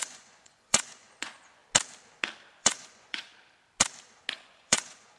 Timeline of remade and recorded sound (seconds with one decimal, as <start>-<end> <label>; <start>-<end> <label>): 0.0-1.6 remade; 1.6-2.5 recorded; 2.5-3.3 remade; 3.3-4.3 recorded; 4.3-5.2 remade